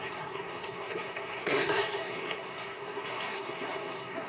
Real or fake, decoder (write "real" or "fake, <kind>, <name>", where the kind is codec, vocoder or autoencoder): fake, codec, SNAC